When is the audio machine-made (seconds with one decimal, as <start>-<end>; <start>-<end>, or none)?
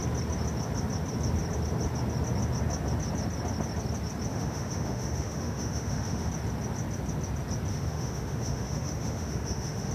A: 4.3-6.3; 7.7-9.9